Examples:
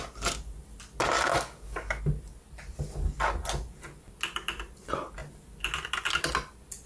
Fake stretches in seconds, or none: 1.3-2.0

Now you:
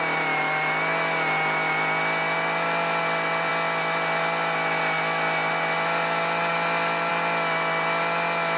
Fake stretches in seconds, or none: none